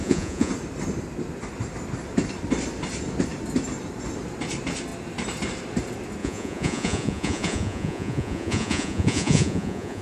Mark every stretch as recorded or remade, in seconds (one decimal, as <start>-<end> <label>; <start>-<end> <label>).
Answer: 0.0-0.5 remade; 0.5-6.2 recorded; 6.2-10.0 remade